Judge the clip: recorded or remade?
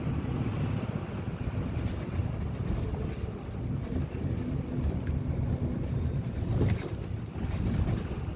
recorded